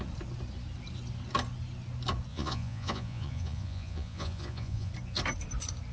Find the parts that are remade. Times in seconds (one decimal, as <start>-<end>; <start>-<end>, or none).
2.3-4.9